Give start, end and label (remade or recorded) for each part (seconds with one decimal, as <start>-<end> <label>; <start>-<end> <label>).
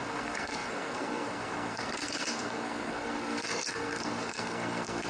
0.0-5.1 remade